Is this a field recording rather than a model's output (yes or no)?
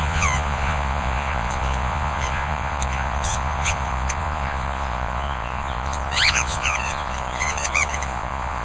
no